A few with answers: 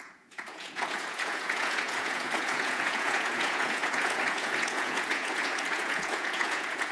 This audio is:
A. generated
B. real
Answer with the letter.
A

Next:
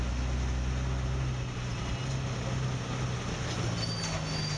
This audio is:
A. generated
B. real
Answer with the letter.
B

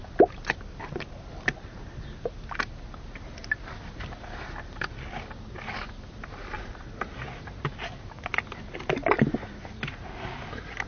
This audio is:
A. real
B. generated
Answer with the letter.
A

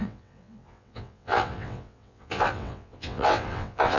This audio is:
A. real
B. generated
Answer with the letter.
B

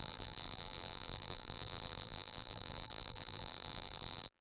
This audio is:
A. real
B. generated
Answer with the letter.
B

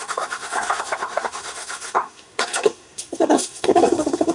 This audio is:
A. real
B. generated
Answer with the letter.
B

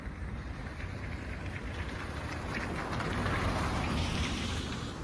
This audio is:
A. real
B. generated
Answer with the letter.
B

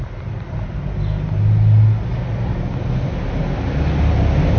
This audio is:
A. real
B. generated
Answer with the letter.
A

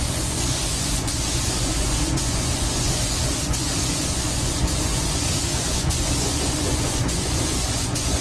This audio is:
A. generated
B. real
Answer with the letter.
A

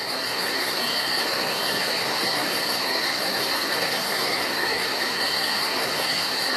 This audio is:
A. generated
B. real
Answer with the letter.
A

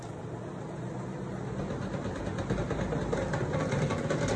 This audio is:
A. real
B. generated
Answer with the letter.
A